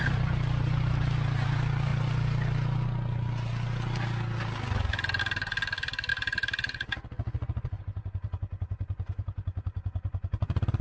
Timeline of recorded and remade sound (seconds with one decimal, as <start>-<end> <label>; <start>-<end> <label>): 0.0-1.9 remade; 1.9-5.2 recorded; 5.2-6.1 remade; 6.1-7.8 recorded; 7.8-10.8 remade